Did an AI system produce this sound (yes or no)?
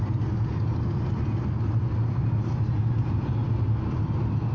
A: no